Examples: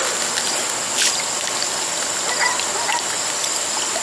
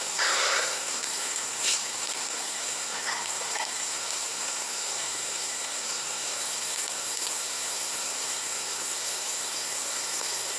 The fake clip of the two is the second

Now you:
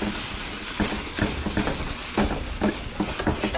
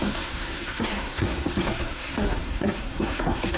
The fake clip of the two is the second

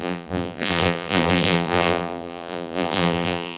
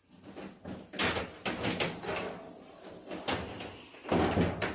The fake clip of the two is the first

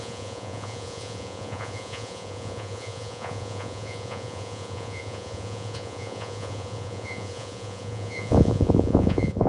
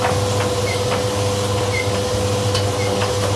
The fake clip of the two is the first